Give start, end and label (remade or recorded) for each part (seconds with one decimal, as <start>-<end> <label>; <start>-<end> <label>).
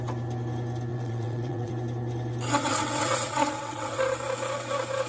0.0-0.9 recorded; 0.9-1.7 remade; 1.7-2.6 recorded; 2.6-4.0 remade; 4.0-5.1 recorded